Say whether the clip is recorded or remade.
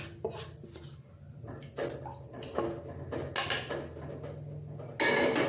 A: recorded